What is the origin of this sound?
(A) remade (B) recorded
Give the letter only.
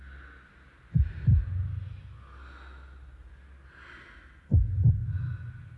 B